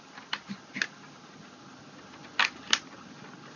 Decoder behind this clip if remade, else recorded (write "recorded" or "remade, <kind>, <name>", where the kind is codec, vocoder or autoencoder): recorded